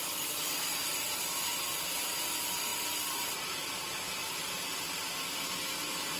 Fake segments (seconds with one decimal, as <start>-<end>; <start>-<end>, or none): 2.7-3.7; 4.2-5.0